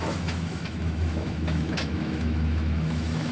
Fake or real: fake